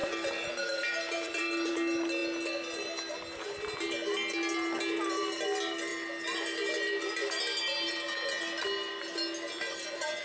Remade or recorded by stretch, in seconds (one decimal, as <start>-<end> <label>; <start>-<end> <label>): 0.0-1.7 remade; 1.7-10.2 recorded